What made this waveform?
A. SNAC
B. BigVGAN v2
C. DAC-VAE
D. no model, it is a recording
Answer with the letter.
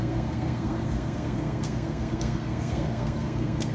A